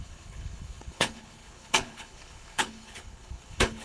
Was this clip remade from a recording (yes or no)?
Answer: yes